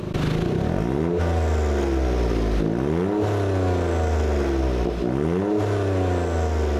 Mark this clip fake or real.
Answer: real